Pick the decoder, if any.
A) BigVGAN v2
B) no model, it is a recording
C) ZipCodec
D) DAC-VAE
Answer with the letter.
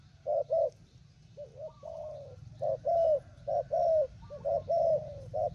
B